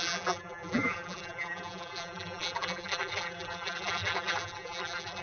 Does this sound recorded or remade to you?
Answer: remade